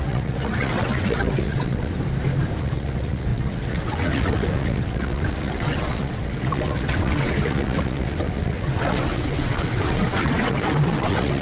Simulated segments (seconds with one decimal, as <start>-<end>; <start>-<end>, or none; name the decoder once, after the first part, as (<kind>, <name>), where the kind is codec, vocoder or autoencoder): 0.0-1.9 (vocoder, WaveNeXt); 2.6-11.4